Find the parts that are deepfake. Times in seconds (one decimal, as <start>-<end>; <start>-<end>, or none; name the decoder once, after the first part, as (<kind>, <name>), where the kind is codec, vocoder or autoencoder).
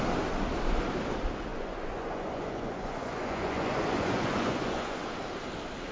1.5-5.0 (vocoder, Vocos)